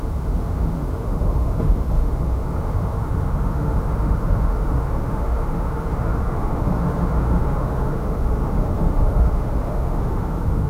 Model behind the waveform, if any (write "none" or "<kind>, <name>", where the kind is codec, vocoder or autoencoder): autoencoder, DAC-VAE